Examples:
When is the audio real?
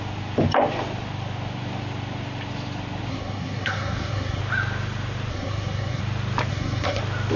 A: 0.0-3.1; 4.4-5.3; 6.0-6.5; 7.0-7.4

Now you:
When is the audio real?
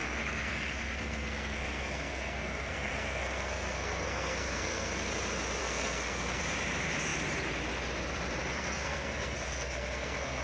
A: 5.1-5.6; 6.4-8.5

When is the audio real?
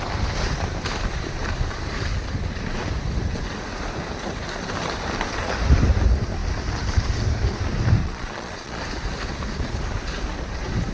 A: 0.0-8.0; 8.8-10.9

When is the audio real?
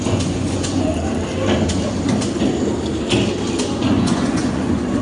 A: 0.9-3.9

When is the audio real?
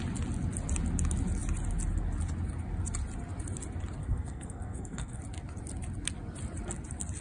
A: 0.0-4.0; 5.2-7.2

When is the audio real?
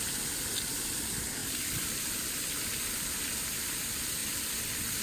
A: 0.0-1.4; 2.7-5.0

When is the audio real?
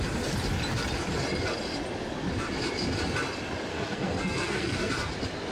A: 0.0-3.7; 4.9-5.5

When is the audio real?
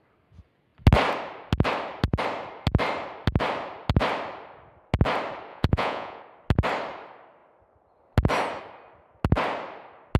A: 0.0-5.5; 6.2-10.2